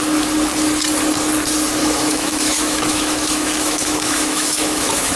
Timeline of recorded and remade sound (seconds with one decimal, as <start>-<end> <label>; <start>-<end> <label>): 0.0-1.8 recorded; 1.8-5.2 remade